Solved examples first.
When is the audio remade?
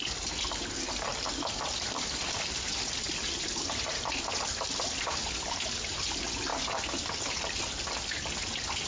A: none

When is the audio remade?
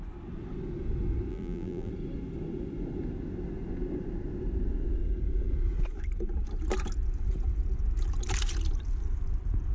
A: 1.3-1.9 (vocoder, BigVGAN v2)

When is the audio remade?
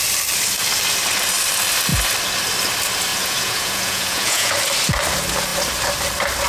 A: 3.1-4.6 (vocoder, Vocos)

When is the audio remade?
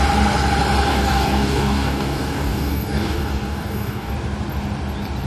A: 0.9-4.1 (codec, DAC)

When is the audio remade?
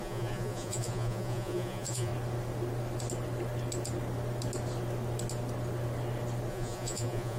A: 0.0-2.1 (vocoder, Vocos); 6.5-7.4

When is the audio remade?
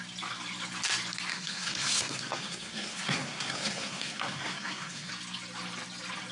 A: 1.3-5.1 (codec, SNAC)